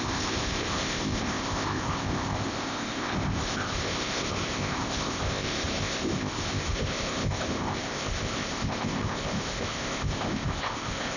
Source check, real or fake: fake